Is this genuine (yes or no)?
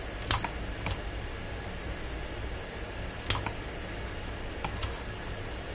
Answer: yes